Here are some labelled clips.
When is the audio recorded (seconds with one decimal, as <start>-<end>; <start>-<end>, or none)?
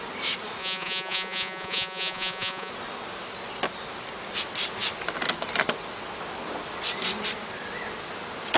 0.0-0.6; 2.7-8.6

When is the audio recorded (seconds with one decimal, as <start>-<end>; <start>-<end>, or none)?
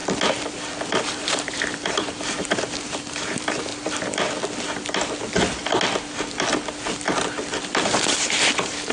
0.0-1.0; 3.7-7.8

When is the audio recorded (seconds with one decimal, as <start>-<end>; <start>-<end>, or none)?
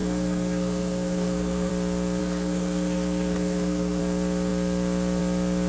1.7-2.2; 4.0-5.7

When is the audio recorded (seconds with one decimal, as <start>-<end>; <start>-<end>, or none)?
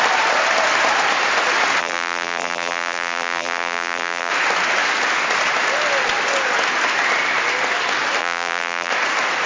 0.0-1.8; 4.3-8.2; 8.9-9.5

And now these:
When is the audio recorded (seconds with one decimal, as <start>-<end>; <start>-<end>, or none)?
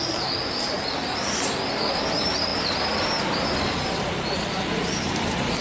0.0-5.6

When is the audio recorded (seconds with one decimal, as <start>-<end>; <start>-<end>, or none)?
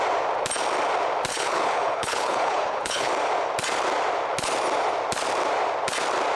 0.0-1.3; 3.1-6.3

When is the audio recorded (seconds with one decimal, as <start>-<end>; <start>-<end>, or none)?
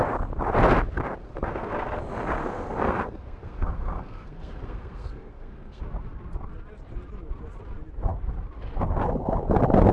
0.0-1.2; 2.0-2.4; 5.8-9.9